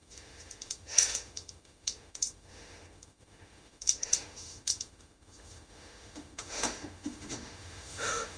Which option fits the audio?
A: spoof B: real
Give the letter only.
A